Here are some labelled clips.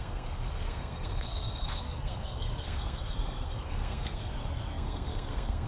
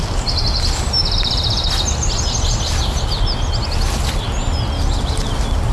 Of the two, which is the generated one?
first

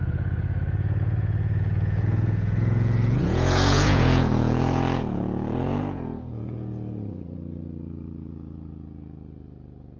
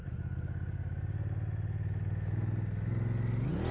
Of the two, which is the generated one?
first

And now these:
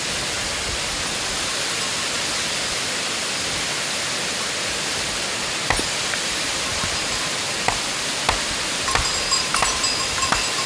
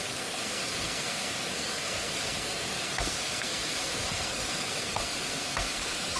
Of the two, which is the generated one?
second